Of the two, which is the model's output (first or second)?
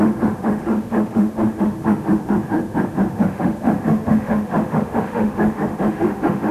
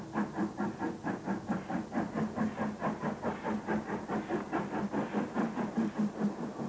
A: first